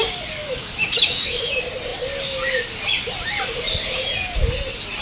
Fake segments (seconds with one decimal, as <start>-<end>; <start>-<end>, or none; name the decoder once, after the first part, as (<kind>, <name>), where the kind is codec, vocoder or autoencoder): 0.4-1.5 (autoencoder, DAC-VAE)